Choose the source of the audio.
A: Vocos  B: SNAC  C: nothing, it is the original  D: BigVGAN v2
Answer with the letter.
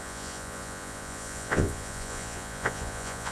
A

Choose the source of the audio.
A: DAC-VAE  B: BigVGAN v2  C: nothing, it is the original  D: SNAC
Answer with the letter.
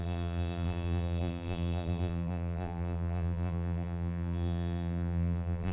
B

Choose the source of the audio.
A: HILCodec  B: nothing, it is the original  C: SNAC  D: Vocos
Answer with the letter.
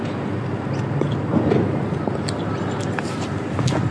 B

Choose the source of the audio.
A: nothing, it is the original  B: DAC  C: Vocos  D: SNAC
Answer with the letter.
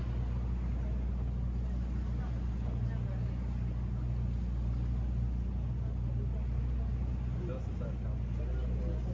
A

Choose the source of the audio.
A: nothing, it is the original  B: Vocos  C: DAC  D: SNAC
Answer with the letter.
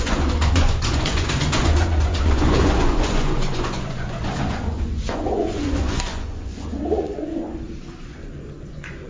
B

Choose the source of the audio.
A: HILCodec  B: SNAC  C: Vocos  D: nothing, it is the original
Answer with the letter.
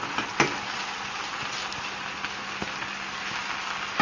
D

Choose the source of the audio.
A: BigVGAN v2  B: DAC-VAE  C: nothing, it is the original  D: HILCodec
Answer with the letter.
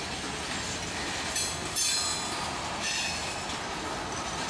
C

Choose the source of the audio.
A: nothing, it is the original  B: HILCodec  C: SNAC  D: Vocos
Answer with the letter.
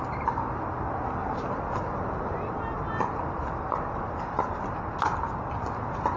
A